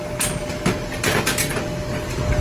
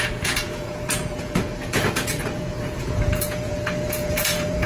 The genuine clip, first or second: first